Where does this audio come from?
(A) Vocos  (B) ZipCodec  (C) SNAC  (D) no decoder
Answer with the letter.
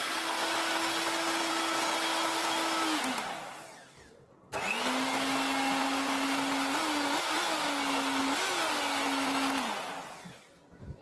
D